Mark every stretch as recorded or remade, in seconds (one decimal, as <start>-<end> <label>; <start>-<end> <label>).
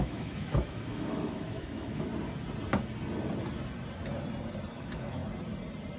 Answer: 0.0-2.1 remade; 2.1-4.7 recorded; 4.7-5.2 remade; 5.2-6.0 recorded